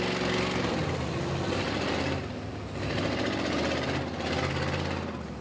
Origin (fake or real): real